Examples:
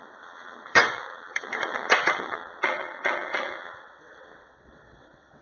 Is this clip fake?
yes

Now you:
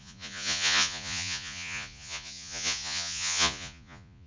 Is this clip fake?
yes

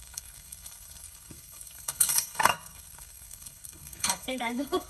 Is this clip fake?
yes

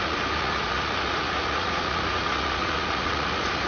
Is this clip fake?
yes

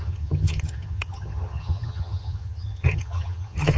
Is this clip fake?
yes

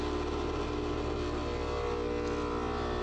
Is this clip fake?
no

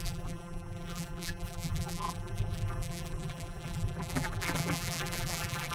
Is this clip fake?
yes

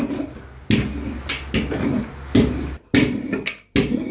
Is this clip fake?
no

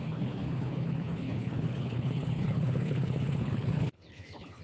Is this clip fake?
yes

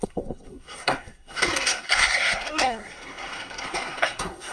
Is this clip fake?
yes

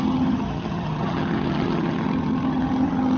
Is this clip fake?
yes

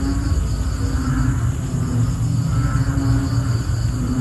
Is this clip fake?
no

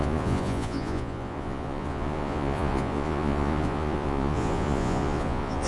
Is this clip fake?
yes